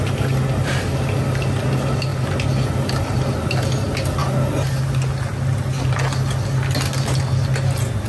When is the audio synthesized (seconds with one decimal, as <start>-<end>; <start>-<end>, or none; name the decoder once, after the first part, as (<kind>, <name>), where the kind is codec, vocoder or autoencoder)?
none